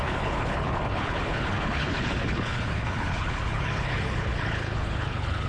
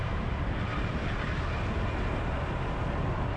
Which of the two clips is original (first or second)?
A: second